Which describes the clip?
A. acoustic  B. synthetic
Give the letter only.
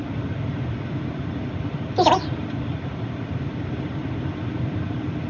B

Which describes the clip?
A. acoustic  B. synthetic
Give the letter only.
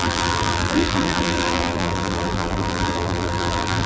B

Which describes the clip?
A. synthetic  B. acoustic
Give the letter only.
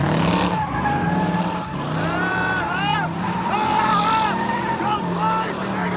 A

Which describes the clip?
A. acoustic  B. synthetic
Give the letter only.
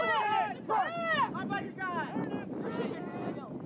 A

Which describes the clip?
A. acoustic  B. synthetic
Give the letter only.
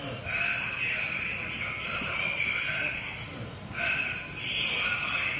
A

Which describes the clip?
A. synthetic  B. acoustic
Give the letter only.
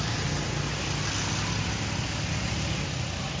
B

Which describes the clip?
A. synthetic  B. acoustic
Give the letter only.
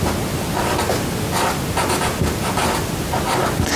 B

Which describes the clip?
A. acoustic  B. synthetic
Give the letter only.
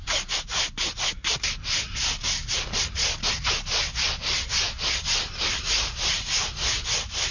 A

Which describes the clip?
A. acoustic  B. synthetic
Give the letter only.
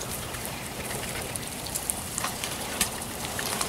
B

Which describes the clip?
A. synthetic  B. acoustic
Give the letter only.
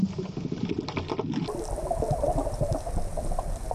B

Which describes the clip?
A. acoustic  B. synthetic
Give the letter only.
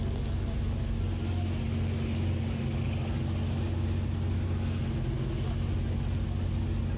A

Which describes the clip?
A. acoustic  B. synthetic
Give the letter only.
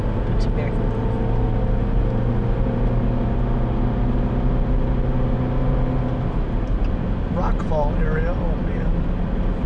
A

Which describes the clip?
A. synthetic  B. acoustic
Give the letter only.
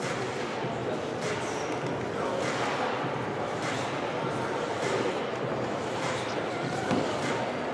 B